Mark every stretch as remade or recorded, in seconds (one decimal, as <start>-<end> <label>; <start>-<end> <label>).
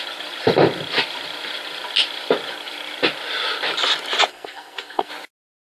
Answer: 0.0-4.3 recorded; 4.3-5.1 remade; 5.1-5.6 recorded